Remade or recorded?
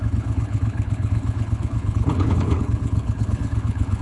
remade